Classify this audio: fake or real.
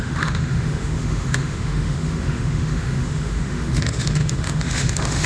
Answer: fake